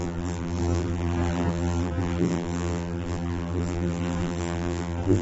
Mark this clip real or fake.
fake